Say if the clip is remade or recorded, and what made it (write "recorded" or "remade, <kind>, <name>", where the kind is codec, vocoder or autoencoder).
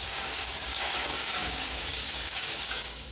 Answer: remade, codec, DAC